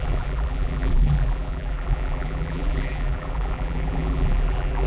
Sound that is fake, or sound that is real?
fake